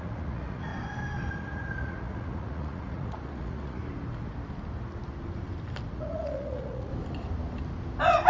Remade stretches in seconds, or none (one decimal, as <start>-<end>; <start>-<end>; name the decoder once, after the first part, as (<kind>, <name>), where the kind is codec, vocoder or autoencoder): 0.0-0.7 (vocoder, Vocos); 1.3-3.8; 5.9-6.9